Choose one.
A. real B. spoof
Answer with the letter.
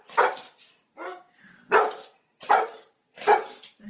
A